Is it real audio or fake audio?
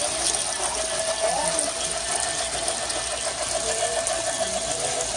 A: real